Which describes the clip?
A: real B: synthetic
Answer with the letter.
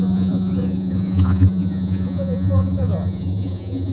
B